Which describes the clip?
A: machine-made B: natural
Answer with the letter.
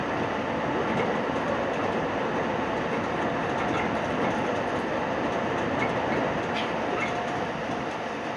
B